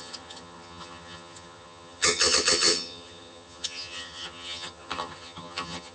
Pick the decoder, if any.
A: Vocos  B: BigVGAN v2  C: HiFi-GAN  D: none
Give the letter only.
C